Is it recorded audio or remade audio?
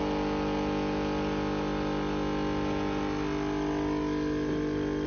recorded